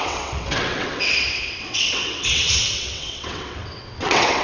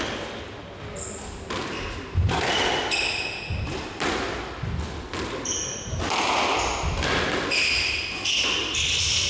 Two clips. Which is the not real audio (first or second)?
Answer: first